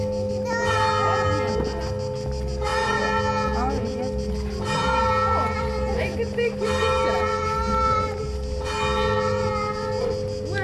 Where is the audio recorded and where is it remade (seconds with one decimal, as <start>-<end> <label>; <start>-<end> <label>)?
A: 0.0-10.6 recorded